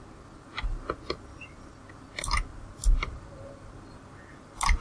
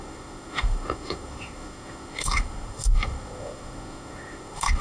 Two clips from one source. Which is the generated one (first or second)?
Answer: second